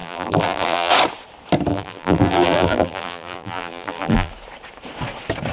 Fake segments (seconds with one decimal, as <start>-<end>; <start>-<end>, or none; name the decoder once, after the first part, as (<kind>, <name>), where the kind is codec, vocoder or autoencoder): 0.0-0.9 (vocoder, BigVGAN v2); 1.7-4.3